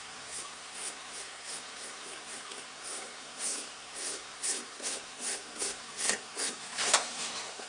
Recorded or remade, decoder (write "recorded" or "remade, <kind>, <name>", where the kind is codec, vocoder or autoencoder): remade, codec, SNAC